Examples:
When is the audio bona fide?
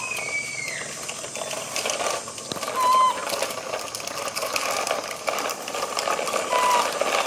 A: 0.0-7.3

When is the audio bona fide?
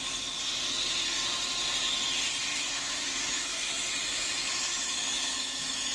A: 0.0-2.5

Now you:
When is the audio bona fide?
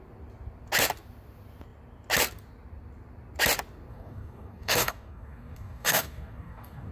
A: 0.0-3.9